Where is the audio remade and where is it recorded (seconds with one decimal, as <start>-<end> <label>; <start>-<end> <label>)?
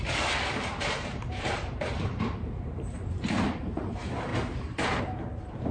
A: 0.0-5.7 remade